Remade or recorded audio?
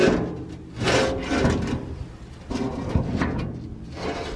recorded